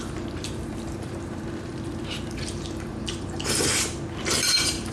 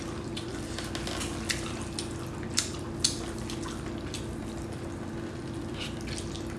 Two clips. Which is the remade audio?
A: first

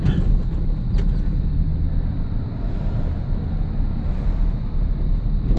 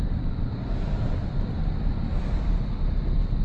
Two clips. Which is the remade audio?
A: second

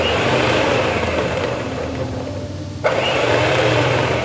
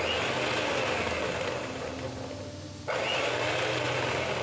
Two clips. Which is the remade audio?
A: first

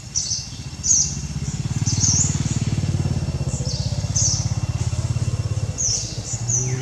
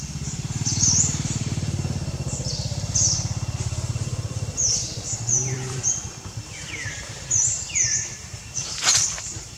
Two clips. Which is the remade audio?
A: second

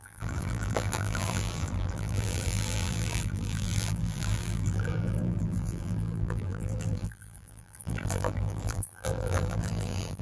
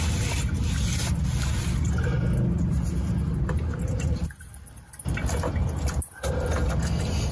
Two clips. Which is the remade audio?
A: first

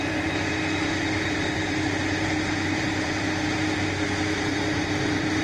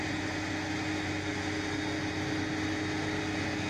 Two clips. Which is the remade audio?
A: first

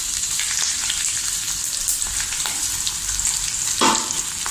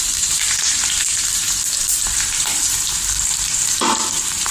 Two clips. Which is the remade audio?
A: second